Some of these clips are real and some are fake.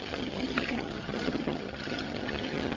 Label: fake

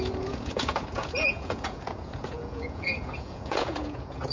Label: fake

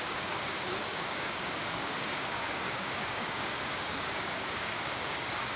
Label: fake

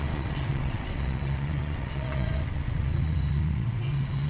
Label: fake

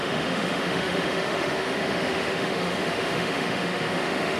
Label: fake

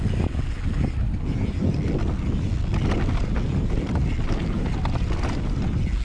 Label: real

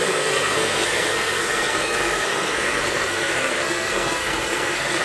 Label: fake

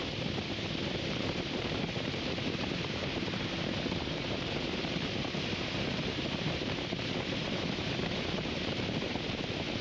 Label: fake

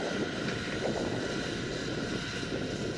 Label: real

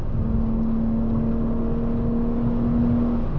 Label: real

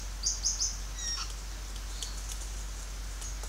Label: real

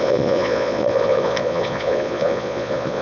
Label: fake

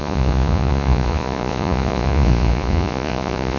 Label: fake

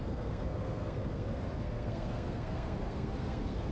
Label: fake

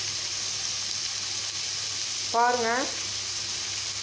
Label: real